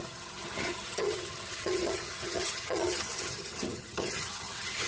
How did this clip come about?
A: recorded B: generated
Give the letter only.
B